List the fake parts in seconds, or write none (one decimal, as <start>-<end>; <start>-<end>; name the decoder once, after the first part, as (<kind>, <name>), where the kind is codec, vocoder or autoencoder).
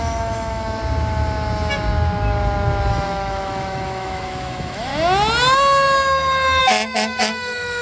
0.0-0.8 (autoencoder, DAC-VAE); 2.9-4.9; 6.6-7.8